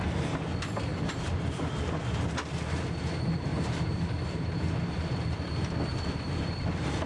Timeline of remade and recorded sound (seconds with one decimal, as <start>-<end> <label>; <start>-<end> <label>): 0.0-0.9 recorded; 0.9-1.7 remade; 1.7-3.5 recorded; 3.5-5.4 remade; 5.4-5.9 recorded; 5.9-7.1 remade